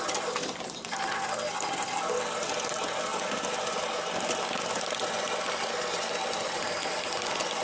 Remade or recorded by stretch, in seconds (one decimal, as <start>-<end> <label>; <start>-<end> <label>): 0.0-7.6 recorded